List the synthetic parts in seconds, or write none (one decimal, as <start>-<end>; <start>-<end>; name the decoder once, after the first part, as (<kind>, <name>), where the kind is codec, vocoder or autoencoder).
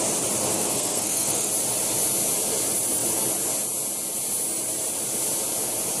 0.5-1.5 (codec, SNAC)